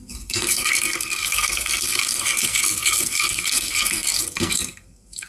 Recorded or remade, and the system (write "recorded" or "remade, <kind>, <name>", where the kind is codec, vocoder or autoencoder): remade, codec, SNAC